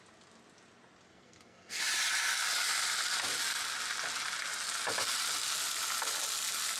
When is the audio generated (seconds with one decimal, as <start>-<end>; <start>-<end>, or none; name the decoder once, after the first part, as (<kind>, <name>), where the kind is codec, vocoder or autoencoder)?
1.1-1.8 (codec, SNAC)